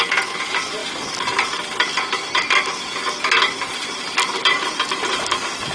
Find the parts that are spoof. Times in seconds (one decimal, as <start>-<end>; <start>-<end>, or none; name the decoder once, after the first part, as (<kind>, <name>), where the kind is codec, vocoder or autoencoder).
none